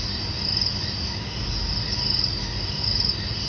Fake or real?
real